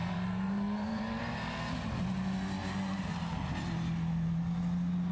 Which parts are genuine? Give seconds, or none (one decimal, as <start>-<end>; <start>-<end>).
1.2-2.6; 3.1-5.1